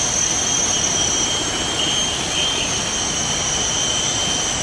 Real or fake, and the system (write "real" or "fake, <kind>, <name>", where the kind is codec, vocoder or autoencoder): real